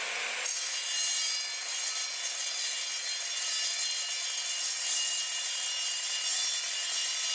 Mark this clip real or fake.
real